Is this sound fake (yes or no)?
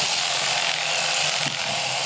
no